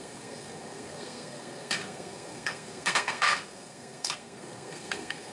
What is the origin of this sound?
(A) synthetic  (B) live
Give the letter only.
A